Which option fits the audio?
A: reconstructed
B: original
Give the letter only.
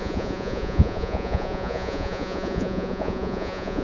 A